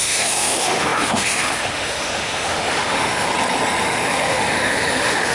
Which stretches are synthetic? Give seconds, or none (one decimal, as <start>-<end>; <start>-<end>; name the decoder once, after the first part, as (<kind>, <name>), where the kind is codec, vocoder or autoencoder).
0.0-3.3 (autoencoder, DAC-VAE); 3.8-5.3